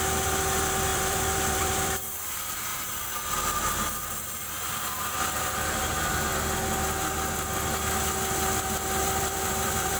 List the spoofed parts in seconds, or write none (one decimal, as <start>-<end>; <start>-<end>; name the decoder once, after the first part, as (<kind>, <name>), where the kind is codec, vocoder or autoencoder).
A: 0.0-6.3 (vocoder, BigVGAN v2); 9.0-10.0